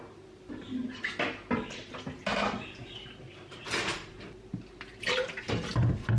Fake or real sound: real